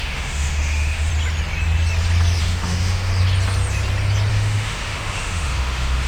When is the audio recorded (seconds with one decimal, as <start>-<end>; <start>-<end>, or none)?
1.1-2.4; 3.1-4.3